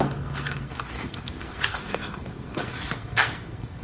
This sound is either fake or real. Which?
fake